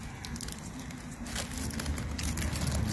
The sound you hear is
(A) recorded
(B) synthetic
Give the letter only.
A